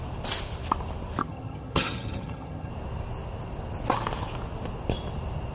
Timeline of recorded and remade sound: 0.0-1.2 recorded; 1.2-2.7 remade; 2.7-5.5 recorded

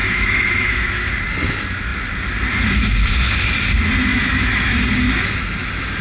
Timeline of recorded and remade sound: 0.0-1.1 remade; 1.1-4.1 recorded; 4.1-4.8 remade; 4.8-6.0 recorded